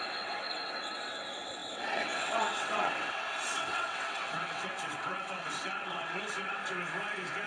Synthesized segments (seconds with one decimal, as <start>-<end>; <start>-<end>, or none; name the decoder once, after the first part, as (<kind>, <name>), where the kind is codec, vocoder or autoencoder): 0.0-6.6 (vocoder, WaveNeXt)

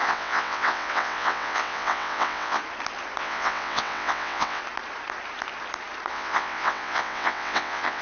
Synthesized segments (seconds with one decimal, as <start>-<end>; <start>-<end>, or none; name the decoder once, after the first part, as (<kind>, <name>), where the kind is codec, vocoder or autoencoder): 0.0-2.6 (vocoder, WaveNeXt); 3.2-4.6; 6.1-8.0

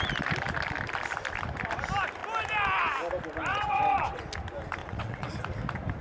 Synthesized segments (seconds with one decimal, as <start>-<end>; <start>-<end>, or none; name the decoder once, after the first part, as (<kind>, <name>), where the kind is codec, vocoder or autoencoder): 3.5-4.2 (vocoder, WaveNeXt); 4.8-5.3

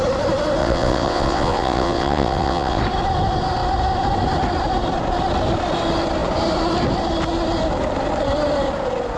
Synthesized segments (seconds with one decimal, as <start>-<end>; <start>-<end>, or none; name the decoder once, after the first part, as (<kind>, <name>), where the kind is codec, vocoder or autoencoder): 0.6-2.8 (vocoder, WaveNeXt)

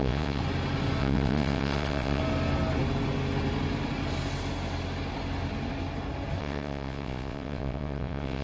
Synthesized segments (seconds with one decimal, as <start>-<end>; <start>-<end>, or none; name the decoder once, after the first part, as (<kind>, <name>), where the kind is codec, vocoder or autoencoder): 0.0-0.4 (vocoder, WaveNeXt); 1.0-2.2; 6.4-8.4

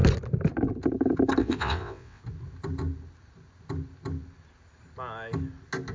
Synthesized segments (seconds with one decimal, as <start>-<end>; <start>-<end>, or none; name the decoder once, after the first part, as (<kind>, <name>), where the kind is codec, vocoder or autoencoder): 1.4-2.2 (vocoder, WaveNeXt)

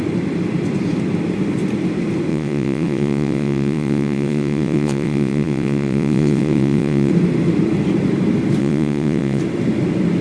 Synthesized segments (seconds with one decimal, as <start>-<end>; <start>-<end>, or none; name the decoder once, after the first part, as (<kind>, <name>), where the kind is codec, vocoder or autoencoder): 2.3-7.1 (vocoder, WaveNeXt); 8.6-9.4